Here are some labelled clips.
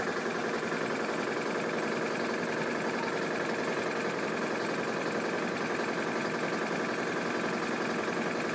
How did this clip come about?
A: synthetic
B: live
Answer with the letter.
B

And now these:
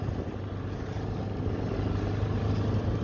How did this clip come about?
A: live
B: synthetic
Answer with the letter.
A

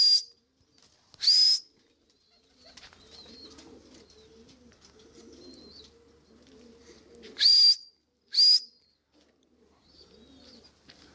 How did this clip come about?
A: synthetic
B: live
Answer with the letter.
B